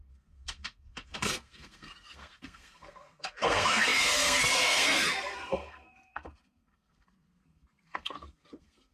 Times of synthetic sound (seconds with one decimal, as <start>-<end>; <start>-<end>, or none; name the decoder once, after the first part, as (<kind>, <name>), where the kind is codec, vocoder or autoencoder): 0.0-8.9 (codec, SNAC)